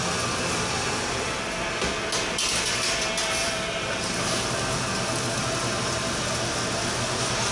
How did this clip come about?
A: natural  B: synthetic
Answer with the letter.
A